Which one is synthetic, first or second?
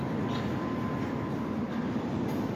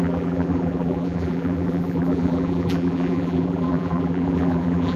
second